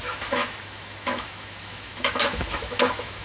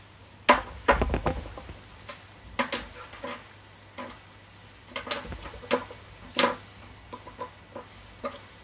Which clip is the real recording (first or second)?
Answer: second